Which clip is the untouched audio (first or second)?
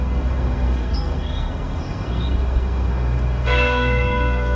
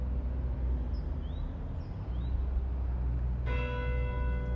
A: second